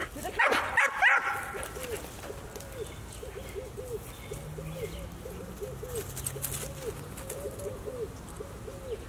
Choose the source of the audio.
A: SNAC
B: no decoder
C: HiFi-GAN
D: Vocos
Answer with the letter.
B